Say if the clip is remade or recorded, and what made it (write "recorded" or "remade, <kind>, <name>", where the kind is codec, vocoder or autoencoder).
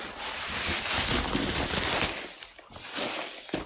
recorded